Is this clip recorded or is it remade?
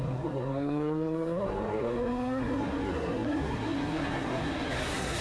remade